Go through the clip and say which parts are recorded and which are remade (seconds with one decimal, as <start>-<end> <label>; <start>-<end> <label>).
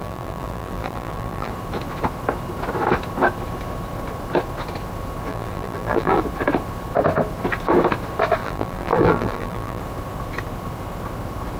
0.0-1.5 remade; 1.5-5.3 recorded; 5.3-6.2 remade; 6.2-8.4 recorded; 8.4-9.8 remade; 9.8-11.6 recorded